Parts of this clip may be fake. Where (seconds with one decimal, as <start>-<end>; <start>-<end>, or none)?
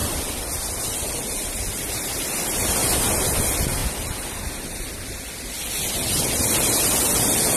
none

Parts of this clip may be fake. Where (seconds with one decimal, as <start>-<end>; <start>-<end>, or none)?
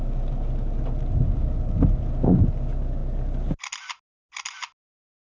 none